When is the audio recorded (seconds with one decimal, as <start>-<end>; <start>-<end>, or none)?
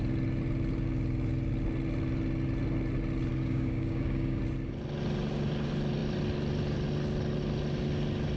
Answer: 0.0-3.3; 4.4-8.4